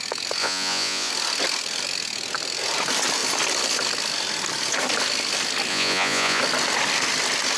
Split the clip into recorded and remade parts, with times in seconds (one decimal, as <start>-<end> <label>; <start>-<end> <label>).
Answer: 0.0-0.4 recorded; 0.4-1.1 remade; 1.1-5.7 recorded; 5.7-6.4 remade; 6.4-7.6 recorded